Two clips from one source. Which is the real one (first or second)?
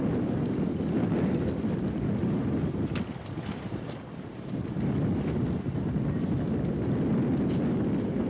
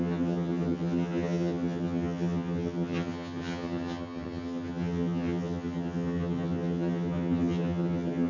first